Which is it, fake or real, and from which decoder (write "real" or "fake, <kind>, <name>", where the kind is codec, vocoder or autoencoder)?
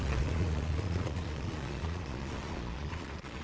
fake, vocoder, Vocos